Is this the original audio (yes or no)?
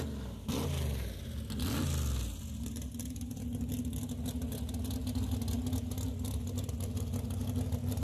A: yes